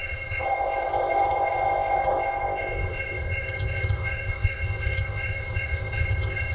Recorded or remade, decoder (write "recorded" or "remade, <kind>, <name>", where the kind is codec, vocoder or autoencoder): remade, codec, ZipCodec